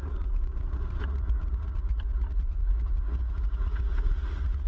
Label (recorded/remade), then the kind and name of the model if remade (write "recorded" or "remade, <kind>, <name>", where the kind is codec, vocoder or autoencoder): remade, vocoder, Vocos